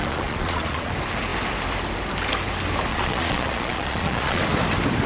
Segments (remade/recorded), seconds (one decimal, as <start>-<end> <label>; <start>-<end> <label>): 0.0-0.9 remade; 0.9-2.9 recorded; 2.9-4.4 remade; 4.4-5.1 recorded